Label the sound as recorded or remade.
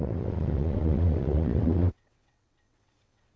remade